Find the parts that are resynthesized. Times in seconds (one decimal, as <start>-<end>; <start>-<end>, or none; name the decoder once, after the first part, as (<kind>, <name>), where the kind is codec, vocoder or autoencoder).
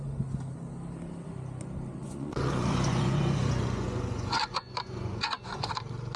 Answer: 2.0-5.7 (vocoder, Vocos)